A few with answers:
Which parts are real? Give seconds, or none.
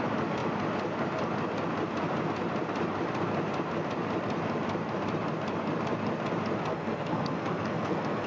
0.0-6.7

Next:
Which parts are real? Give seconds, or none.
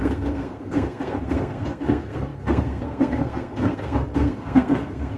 none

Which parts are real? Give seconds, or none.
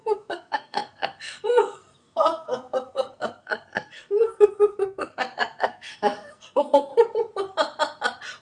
6.9-8.4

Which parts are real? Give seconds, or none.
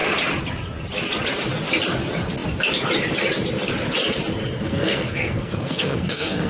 0.0-4.6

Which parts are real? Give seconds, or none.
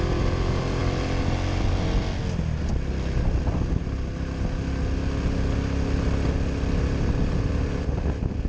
0.0-8.5